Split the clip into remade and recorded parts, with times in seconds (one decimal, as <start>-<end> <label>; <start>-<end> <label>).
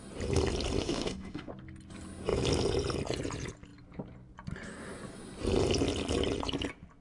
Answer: 0.0-0.8 recorded; 0.8-1.5 remade; 1.5-7.0 recorded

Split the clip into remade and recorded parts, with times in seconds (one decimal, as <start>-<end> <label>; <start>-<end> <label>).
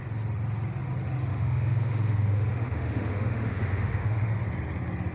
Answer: 0.0-1.3 recorded; 1.3-4.3 remade; 4.3-5.1 recorded